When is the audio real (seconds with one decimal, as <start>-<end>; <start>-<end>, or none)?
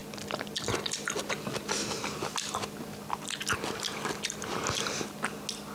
0.0-5.7